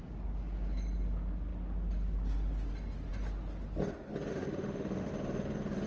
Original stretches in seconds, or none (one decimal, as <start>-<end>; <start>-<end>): 0.0-4.3; 5.1-5.9